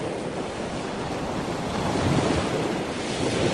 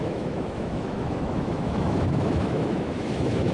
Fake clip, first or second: second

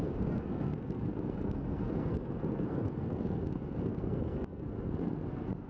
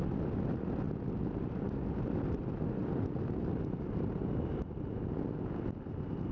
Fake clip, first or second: first